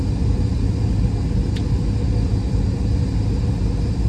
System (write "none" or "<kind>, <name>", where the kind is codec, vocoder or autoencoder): none